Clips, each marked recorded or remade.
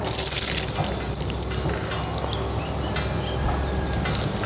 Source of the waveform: recorded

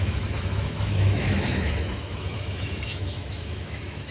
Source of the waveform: remade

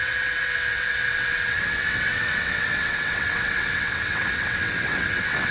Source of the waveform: remade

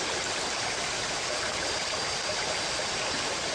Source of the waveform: recorded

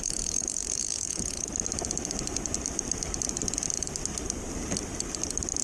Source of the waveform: recorded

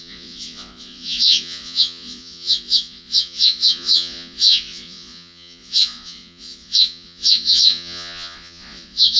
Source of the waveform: remade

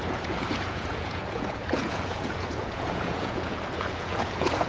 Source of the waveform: remade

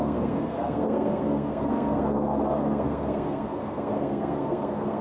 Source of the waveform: remade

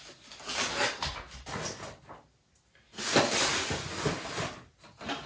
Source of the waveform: recorded